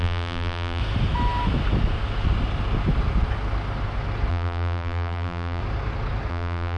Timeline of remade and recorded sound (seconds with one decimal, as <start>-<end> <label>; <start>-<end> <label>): 0.0-0.8 remade; 0.8-4.3 recorded; 4.3-5.6 remade; 5.6-6.3 recorded; 6.3-6.8 remade